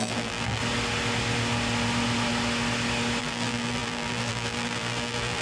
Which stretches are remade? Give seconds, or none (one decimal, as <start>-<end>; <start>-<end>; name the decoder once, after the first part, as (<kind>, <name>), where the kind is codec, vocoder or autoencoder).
0.0-0.6 (vocoder, BigVGAN v2); 3.2-5.4